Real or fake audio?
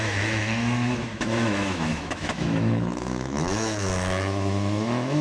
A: fake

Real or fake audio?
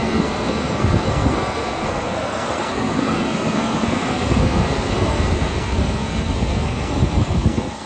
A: fake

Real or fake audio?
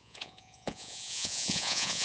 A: fake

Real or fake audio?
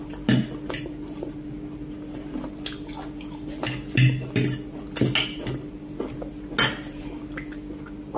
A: real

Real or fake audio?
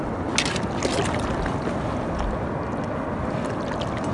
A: real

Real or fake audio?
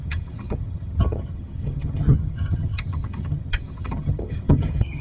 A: fake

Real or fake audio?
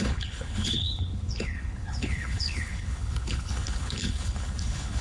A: fake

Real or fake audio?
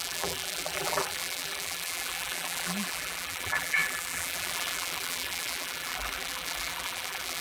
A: fake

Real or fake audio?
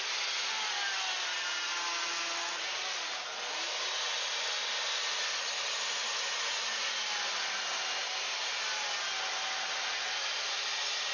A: real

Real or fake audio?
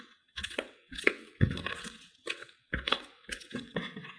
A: fake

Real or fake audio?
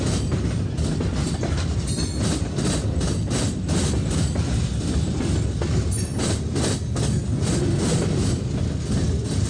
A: real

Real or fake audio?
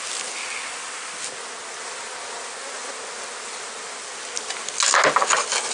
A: real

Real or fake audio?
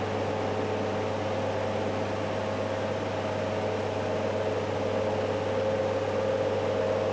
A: real